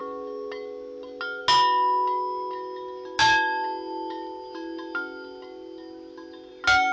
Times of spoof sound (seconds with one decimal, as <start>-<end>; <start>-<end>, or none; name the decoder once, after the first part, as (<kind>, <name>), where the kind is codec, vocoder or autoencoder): none